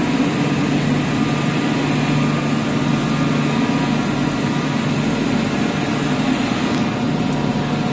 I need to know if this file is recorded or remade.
recorded